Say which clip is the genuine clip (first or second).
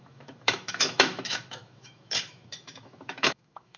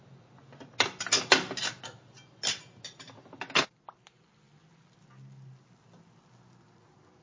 second